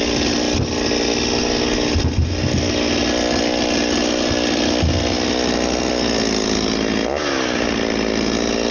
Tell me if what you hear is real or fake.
real